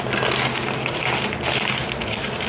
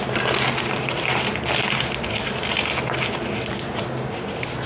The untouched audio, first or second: first